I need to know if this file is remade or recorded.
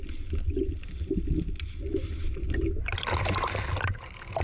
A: recorded